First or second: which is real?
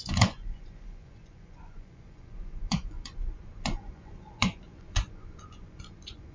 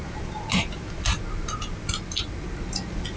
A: second